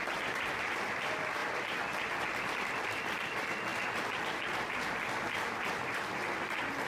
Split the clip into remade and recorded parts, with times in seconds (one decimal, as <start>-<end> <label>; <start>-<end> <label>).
0.0-1.4 remade; 1.4-2.2 recorded; 2.2-3.7 remade; 3.7-6.2 recorded; 6.2-6.9 remade